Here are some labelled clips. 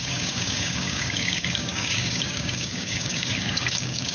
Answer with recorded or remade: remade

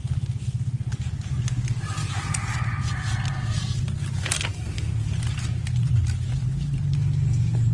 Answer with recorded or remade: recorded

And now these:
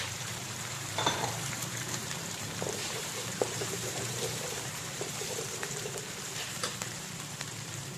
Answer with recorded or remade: remade